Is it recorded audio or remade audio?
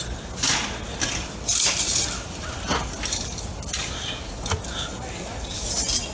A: recorded